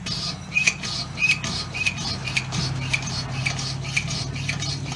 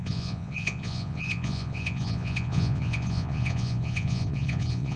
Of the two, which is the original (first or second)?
first